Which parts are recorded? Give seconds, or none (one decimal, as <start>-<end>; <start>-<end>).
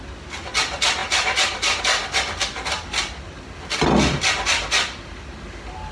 0.0-5.9